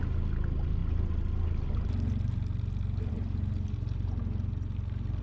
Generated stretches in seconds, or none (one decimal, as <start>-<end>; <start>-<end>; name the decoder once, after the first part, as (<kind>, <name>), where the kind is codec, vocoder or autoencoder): none